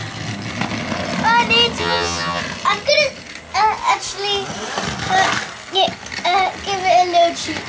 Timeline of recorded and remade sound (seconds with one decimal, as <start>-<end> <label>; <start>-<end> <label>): 0.0-1.8 recorded; 1.8-2.4 remade; 2.4-7.7 recorded